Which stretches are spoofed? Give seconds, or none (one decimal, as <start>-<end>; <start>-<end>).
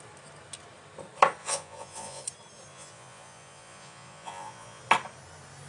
1.4-2.2; 2.7-4.8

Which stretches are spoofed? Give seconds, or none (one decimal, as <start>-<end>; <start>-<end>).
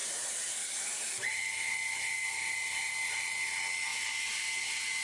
3.9-4.4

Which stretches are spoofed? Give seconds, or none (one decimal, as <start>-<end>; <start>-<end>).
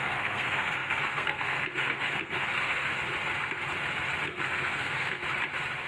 0.0-2.9; 4.2-5.2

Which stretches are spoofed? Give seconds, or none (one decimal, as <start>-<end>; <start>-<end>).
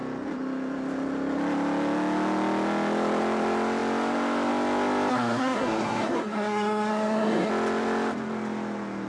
5.1-7.5